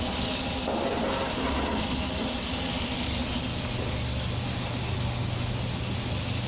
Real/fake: real